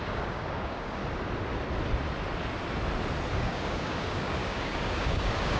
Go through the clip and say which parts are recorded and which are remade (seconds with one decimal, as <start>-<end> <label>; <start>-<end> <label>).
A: 0.0-1.0 remade; 1.0-3.3 recorded; 3.3-5.6 remade